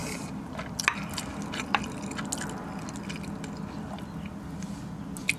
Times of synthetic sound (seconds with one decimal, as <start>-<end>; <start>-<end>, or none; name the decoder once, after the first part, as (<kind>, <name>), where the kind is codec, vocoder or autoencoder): none